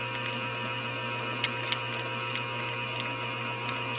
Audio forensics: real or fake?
real